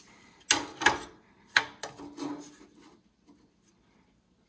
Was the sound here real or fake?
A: real